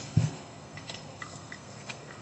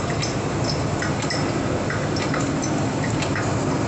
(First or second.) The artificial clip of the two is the first